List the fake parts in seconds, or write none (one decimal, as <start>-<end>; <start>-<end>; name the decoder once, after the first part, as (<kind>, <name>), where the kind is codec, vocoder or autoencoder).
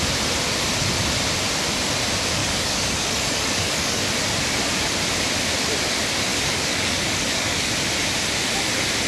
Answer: 2.4-4.0 (codec, DAC); 6.3-7.7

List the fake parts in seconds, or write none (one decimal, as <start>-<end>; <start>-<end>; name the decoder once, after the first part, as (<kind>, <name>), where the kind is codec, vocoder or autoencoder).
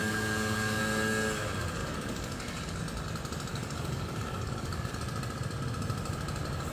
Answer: 0.0-0.8 (codec, DAC); 1.8-2.8; 3.5-5.0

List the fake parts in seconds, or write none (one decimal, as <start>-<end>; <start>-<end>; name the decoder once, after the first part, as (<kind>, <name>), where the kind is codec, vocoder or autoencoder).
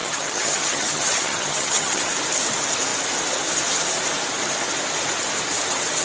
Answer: 0.0-2.1 (vocoder, HiFi-GAN)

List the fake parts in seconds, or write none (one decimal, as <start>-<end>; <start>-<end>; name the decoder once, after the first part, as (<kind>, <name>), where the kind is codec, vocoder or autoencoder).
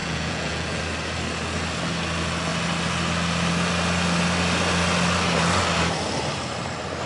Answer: 0.0-0.8 (vocoder, Vocos)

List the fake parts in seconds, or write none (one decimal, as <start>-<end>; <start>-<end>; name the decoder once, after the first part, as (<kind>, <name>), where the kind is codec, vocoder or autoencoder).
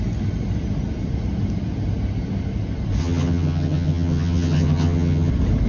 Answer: 3.0-5.3 (vocoder, HiFi-GAN)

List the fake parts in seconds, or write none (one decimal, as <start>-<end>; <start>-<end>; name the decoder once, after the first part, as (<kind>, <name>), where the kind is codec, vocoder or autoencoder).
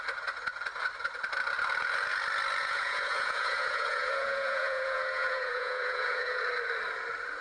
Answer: 2.6-6.4 (vocoder, Vocos)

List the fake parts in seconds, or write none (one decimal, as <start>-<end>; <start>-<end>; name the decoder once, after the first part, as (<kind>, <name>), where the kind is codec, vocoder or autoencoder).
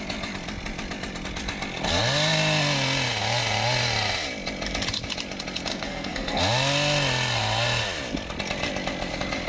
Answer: 5.7-6.4 (codec, SNAC)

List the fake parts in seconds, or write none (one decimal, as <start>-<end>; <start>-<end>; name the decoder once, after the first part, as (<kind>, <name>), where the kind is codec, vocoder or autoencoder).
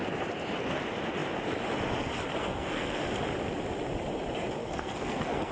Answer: 2.4-3.0 (codec, SNAC); 4.6-5.5